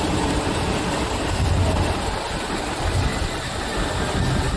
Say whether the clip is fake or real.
real